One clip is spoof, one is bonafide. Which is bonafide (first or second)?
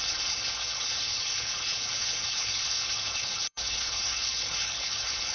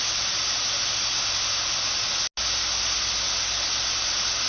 second